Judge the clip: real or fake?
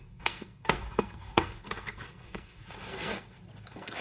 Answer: fake